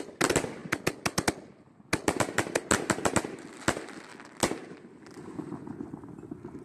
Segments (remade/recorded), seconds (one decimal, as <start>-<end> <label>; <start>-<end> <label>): 0.0-6.6 recorded